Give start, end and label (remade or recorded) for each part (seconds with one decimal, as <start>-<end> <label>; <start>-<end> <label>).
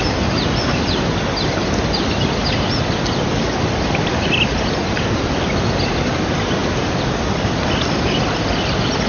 0.0-9.1 recorded